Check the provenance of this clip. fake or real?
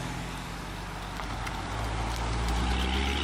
real